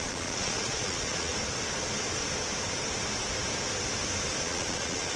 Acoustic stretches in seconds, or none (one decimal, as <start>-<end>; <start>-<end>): 1.3-4.4